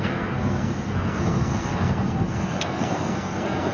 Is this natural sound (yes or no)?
no